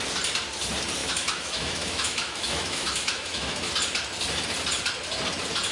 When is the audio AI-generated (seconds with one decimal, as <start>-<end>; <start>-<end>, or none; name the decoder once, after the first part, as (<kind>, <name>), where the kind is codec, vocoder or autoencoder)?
1.0-3.7 (autoencoder, DAC-VAE)